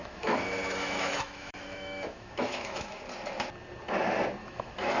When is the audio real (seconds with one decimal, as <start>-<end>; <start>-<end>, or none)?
3.0-4.4